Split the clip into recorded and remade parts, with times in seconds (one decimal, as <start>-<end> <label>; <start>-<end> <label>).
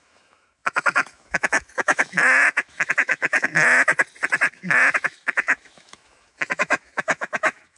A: 0.0-3.9 remade; 3.9-4.5 recorded; 4.5-7.8 remade